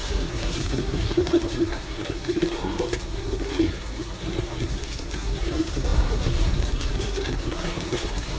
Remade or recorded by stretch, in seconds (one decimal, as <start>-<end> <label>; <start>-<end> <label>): 0.0-8.4 remade